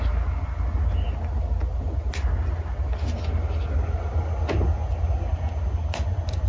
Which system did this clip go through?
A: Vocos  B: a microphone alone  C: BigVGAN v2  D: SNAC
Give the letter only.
B